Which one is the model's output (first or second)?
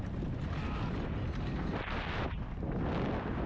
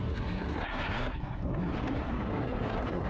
second